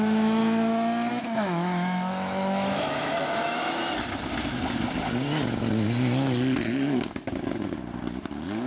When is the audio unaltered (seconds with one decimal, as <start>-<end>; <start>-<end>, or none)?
0.4-1.1; 3.8-8.7